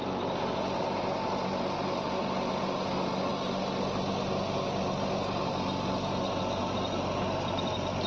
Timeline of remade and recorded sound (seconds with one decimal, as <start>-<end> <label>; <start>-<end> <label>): 0.0-8.1 recorded